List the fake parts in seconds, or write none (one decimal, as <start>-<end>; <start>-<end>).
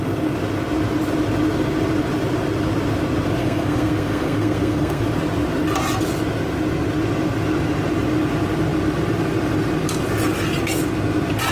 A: 3.4-5.0